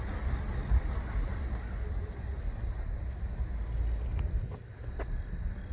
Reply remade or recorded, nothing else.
recorded